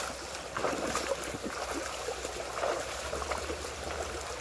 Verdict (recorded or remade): recorded